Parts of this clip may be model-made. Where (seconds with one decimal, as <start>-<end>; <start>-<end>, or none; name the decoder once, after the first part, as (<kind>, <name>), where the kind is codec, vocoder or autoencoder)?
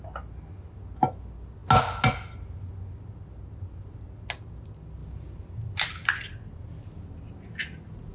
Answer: none